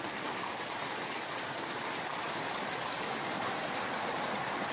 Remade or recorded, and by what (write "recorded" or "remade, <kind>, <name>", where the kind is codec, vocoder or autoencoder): recorded